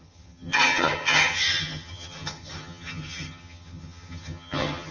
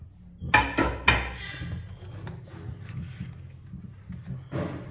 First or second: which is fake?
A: first